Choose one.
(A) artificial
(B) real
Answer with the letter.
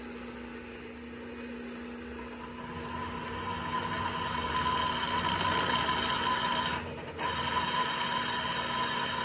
B